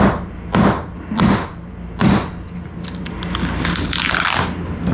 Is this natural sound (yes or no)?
yes